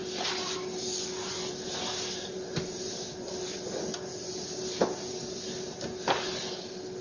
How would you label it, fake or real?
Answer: real